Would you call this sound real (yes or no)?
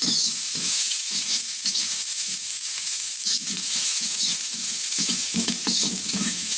no